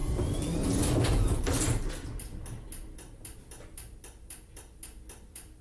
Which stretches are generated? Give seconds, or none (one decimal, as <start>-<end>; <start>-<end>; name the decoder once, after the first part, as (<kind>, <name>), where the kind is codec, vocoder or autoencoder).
0.0-1.9 (vocoder, BigVGAN v2)